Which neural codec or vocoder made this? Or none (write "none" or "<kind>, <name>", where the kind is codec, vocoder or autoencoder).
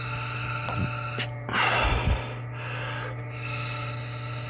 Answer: none